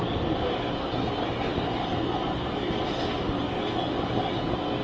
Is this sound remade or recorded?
recorded